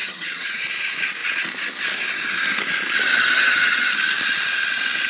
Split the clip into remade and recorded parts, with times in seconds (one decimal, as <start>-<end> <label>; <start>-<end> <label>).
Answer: 0.0-0.6 remade; 0.6-3.1 recorded; 3.1-3.9 remade; 3.9-5.1 recorded